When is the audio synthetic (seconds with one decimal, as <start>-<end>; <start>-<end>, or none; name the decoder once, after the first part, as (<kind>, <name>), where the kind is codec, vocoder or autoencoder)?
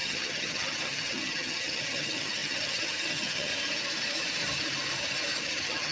0.0-3.5 (vocoder, HiFi-GAN); 5.4-5.9